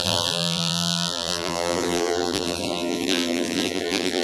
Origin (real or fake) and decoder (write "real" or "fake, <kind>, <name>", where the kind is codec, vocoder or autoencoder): fake, vocoder, BigVGAN v2